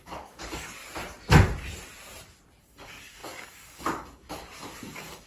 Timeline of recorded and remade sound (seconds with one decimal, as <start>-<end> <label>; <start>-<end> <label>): 0.0-0.8 remade; 0.8-2.6 recorded; 2.6-5.3 remade